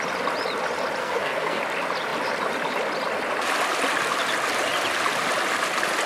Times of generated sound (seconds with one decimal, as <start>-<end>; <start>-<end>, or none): 1.0-1.6